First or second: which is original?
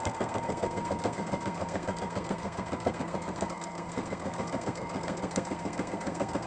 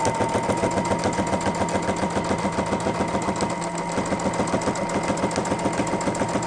second